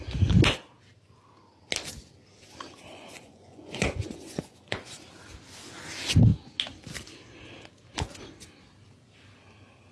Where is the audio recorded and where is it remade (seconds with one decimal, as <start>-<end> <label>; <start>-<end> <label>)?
0.0-2.9 recorded; 2.9-5.0 remade; 5.0-9.9 recorded